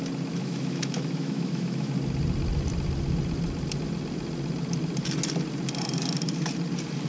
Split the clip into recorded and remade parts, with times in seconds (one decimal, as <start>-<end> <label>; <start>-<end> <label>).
0.0-0.4 recorded; 0.4-1.9 remade; 1.9-7.1 recorded